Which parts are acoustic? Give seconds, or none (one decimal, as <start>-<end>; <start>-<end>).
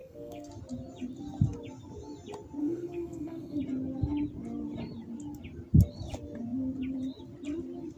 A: 0.5-2.6; 3.6-8.0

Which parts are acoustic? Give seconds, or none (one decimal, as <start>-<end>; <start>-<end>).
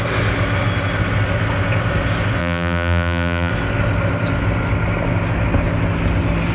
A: 0.0-2.4; 3.5-6.5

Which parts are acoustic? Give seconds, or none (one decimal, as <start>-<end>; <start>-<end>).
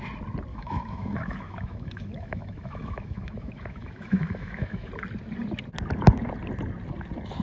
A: 0.0-0.5; 4.9-7.4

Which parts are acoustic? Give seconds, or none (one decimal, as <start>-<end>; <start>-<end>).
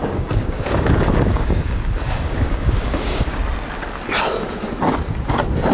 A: 3.4-5.7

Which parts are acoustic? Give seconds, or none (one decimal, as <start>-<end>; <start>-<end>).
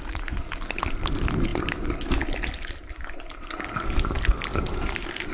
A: 0.0-5.3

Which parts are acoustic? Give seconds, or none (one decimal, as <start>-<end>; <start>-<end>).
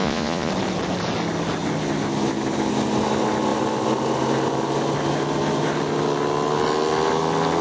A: 0.5-7.6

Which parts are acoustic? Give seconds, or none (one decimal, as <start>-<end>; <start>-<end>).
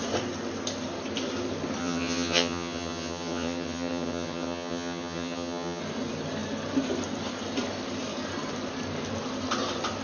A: 0.0-1.8; 5.8-10.0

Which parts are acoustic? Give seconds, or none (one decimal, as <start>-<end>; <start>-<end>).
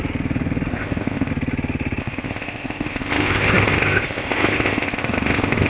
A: 0.0-0.7; 1.3-2.0